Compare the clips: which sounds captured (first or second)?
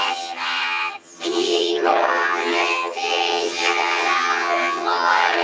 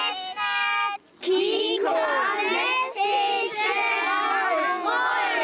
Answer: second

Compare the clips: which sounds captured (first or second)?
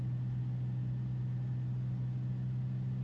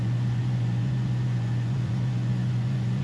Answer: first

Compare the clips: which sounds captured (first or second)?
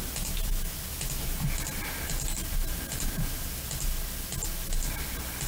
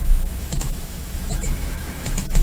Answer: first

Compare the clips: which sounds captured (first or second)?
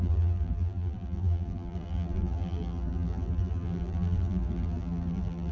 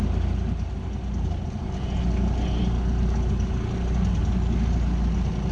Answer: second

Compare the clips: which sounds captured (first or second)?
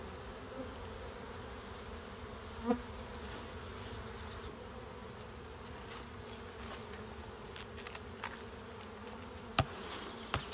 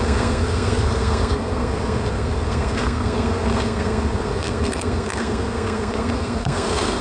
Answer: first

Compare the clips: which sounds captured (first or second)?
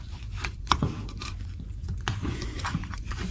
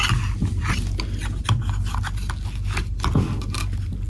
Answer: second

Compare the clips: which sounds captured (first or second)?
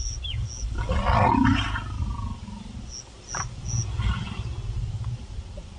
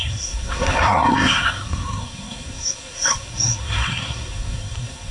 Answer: first